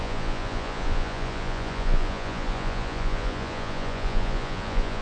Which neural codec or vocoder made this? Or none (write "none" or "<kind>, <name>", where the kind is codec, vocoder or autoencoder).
vocoder, Vocos